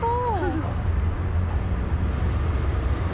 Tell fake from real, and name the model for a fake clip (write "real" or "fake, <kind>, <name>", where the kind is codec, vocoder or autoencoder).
real